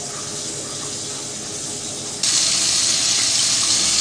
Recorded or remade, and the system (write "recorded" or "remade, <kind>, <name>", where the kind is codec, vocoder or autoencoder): recorded